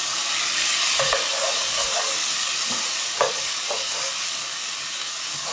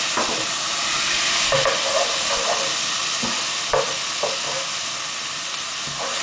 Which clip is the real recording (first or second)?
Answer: second